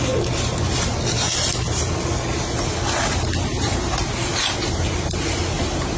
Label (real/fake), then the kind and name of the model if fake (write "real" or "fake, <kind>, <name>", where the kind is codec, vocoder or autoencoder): real